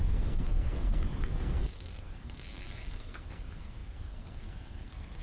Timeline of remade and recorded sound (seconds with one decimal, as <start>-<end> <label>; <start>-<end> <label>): 0.0-5.2 remade